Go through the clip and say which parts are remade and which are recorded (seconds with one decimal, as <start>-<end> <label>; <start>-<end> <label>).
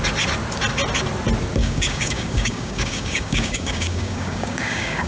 0.0-1.6 recorded; 1.6-5.1 remade